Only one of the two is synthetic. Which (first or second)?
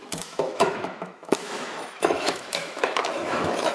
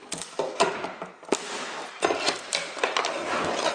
first